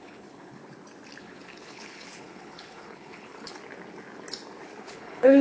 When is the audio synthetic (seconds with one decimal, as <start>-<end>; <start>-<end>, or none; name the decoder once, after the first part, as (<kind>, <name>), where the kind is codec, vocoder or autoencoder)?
0.0-0.6 (codec, HILCodec); 1.2-3.5; 4.9-5.4